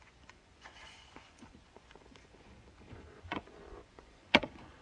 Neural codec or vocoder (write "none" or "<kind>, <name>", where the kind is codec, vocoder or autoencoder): vocoder, Vocos